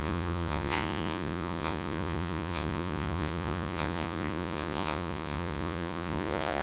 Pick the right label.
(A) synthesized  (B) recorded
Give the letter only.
A